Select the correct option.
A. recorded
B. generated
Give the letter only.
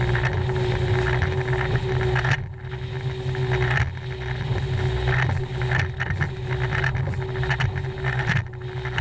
A